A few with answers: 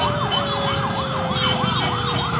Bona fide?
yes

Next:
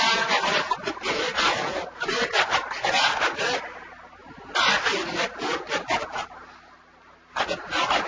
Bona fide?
yes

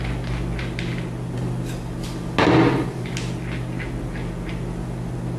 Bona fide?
yes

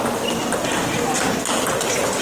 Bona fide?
yes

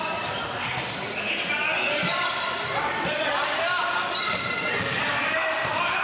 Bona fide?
no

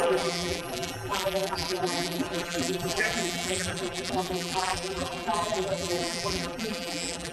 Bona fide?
no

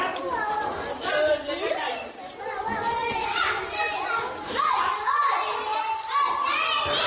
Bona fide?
yes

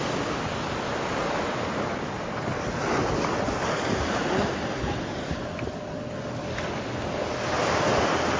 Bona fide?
yes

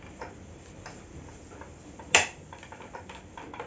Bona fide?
yes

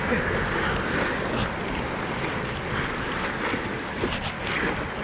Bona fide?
yes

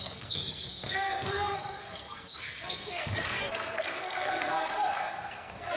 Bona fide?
no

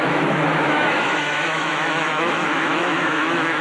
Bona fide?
no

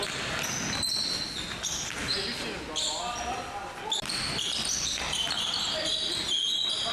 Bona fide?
yes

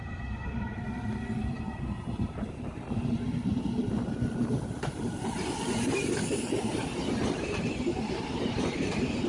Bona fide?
no